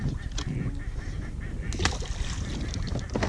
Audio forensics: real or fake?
real